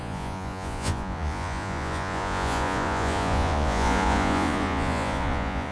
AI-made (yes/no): yes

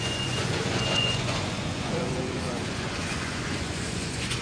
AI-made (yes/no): yes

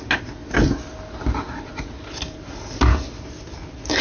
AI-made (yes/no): no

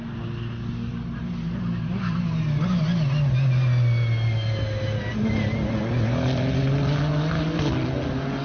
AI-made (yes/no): no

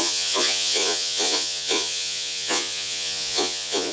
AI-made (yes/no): yes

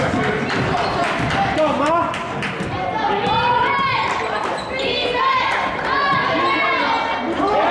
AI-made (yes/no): no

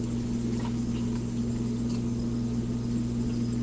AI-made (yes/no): no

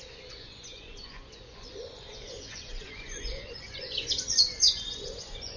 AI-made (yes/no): yes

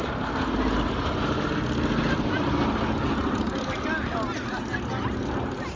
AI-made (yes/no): no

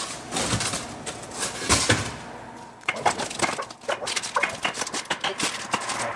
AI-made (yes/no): no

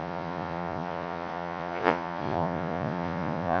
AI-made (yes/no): yes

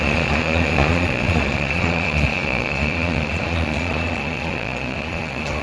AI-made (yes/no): yes